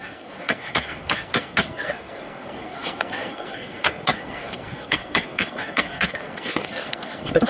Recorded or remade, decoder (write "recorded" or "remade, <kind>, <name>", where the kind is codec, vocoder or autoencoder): remade, codec, SNAC